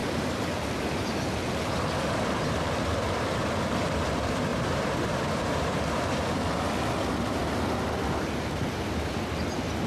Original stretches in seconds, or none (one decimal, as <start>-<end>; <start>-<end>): 0.5-4.5; 6.2-9.9